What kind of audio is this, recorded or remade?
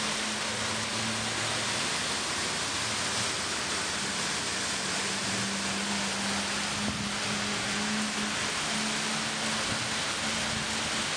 recorded